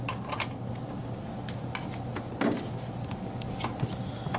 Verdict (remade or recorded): recorded